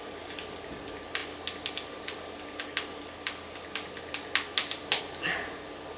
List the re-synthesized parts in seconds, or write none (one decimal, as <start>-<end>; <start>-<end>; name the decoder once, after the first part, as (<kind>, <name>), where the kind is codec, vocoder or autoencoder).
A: none